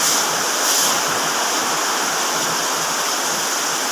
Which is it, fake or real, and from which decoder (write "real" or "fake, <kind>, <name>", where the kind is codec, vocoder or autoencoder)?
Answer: real